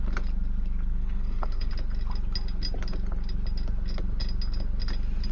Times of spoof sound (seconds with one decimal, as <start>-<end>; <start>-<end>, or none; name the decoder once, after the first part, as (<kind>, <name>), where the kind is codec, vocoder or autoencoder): 0.9-1.7 (codec, SNAC)